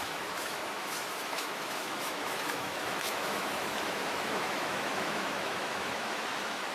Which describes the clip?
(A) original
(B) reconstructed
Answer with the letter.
B